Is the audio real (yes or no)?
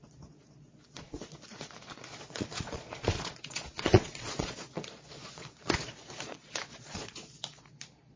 no